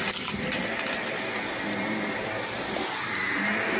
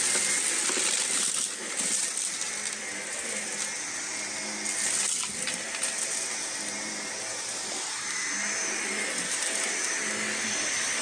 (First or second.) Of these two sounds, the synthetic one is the first